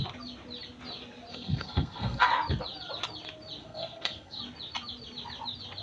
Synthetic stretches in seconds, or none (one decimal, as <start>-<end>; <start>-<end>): 1.3-2.3; 3.6-4.4